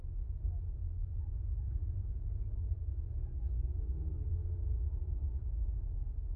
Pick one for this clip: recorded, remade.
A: recorded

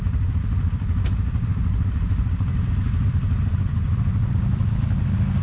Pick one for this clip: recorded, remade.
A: recorded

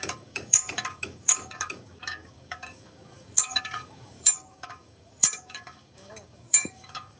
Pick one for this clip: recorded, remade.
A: remade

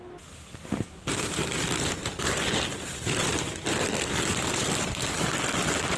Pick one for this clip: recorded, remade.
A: recorded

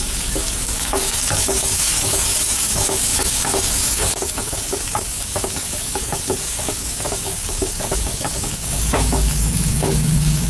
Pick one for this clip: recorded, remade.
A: remade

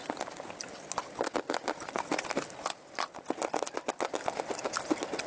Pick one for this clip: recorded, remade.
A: recorded